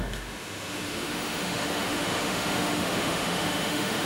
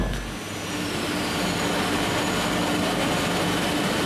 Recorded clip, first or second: second